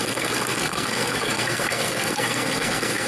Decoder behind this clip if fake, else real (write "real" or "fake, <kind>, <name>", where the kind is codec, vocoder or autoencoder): fake, codec, SNAC